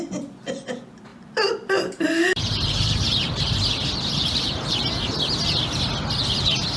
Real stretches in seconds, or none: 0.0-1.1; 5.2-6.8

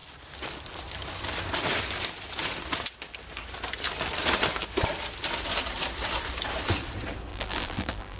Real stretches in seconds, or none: 0.0-7.3

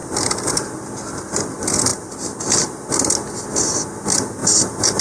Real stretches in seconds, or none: 0.5-1.9; 2.4-4.4

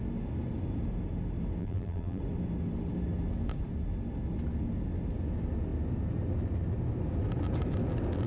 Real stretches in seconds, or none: 0.0-1.6; 2.2-8.3

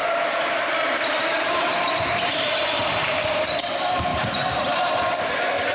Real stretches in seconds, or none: 3.4-4.1; 5.0-5.7